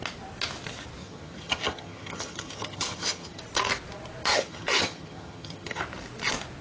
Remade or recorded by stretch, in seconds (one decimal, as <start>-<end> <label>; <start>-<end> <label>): 0.0-1.0 recorded; 1.0-3.4 remade; 3.4-4.3 recorded; 4.3-5.8 remade; 5.8-6.6 recorded